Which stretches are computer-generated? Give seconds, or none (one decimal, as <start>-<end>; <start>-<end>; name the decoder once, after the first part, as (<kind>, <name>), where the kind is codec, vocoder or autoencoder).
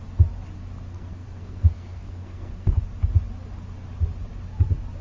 0.9-2.8 (codec, SNAC)